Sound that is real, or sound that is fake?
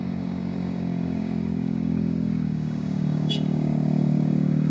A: fake